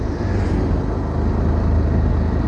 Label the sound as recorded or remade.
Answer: recorded